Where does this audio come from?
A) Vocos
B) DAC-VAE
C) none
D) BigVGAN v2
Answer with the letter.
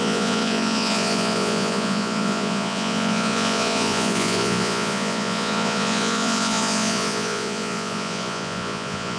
A